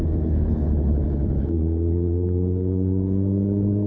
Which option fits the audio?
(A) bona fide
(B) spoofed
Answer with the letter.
B